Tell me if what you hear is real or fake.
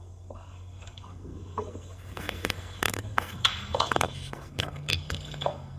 fake